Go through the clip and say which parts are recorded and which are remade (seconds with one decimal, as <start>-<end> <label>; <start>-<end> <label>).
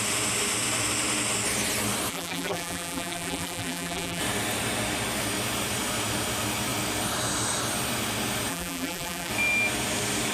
0.0-2.1 recorded; 2.1-4.2 remade; 4.2-8.5 recorded; 8.5-9.3 remade; 9.3-10.3 recorded